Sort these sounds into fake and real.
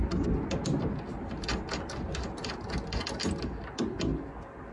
real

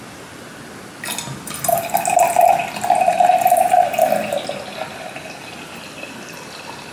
real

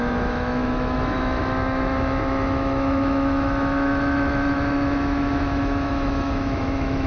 fake